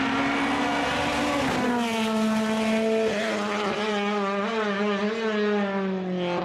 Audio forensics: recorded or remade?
recorded